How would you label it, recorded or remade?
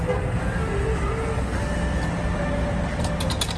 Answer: recorded